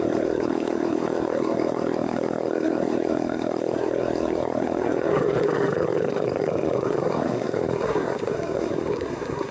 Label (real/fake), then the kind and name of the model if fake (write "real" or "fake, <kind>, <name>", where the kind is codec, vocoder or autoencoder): fake, codec, SNAC